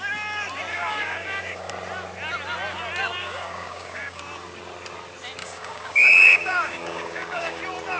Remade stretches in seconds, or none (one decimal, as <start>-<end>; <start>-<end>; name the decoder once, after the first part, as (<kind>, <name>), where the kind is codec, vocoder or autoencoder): 0.7-1.7 (codec, DAC); 3.2-4.2; 5.4-7.6